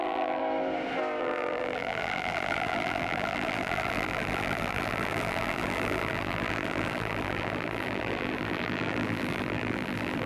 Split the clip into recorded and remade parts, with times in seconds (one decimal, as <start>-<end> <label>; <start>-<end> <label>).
0.0-0.4 remade; 0.4-1.2 recorded; 1.2-10.3 remade